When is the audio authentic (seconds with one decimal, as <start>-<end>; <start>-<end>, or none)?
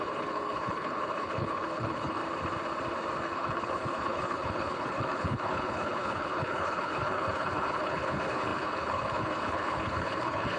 2.2-3.2